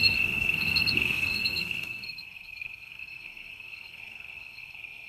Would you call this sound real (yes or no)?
no